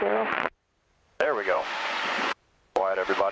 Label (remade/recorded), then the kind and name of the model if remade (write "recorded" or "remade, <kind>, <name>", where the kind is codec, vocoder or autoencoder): remade, vocoder, Vocos